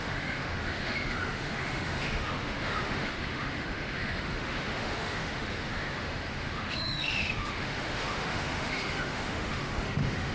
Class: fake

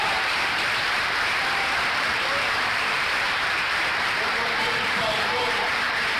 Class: fake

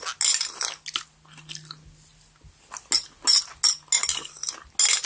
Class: real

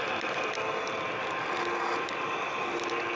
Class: real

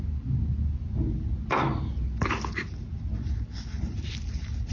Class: real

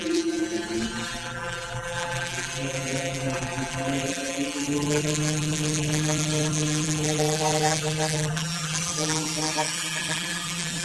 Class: fake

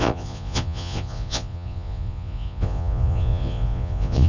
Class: fake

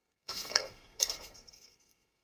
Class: fake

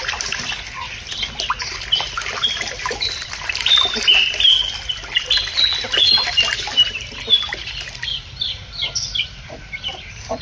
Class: fake